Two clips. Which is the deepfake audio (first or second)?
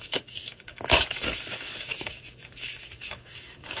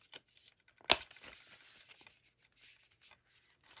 first